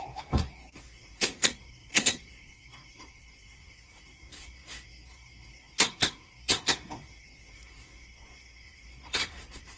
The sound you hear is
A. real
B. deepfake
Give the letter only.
B